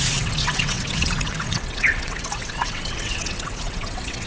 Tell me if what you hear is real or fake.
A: fake